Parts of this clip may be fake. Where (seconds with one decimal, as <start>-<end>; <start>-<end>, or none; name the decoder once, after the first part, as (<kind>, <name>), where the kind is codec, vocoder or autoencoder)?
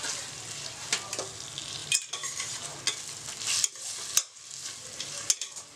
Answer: 1.8-2.8 (vocoder, BigVGAN v2)